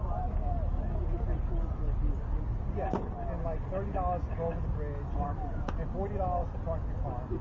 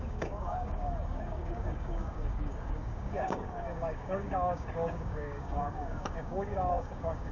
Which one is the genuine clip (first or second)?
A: first